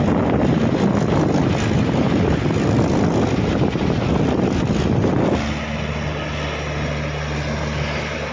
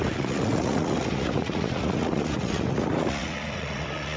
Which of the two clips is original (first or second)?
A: first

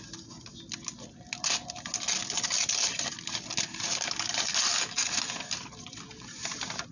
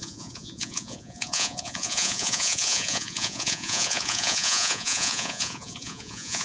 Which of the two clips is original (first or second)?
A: first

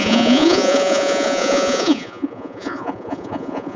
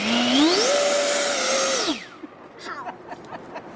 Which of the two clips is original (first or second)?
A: second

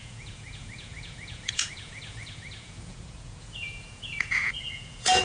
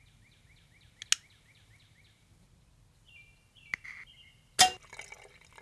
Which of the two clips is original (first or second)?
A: second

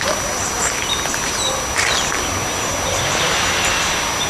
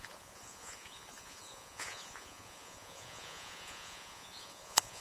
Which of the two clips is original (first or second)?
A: first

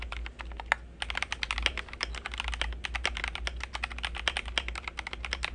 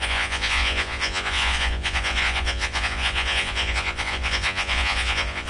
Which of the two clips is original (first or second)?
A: first